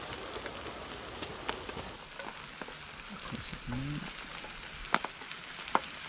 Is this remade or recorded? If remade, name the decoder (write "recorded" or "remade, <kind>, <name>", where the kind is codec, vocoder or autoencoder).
recorded